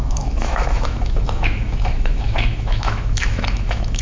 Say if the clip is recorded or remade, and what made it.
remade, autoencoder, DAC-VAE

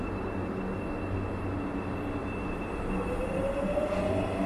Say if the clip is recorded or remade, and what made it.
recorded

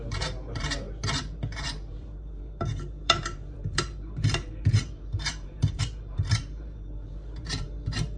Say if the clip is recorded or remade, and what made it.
remade, vocoder, BigVGAN v2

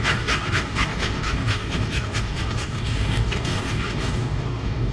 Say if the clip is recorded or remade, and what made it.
remade, codec, DAC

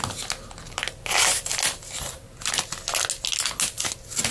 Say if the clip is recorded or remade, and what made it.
recorded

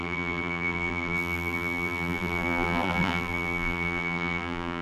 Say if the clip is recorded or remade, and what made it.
remade, vocoder, BigVGAN v2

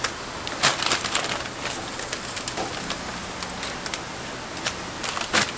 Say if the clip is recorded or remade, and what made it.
recorded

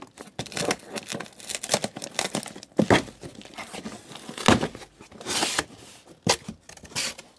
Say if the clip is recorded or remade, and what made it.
recorded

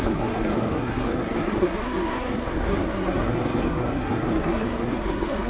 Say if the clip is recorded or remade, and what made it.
remade, codec, SNAC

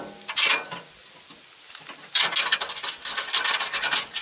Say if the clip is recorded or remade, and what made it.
recorded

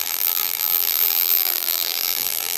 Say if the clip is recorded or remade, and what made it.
remade, vocoder, BigVGAN v2